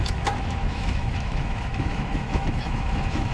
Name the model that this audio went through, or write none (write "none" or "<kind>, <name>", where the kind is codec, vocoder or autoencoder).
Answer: autoencoder, DAC-VAE